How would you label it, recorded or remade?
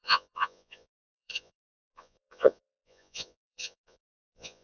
remade